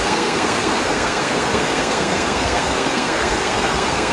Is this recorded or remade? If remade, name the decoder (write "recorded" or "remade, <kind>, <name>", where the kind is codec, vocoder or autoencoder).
remade, codec, SNAC